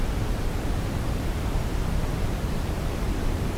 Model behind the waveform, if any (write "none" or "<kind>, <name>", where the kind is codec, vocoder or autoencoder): vocoder, BigVGAN v2